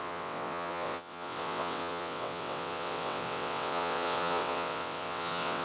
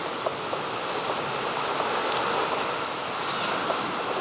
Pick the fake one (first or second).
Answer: first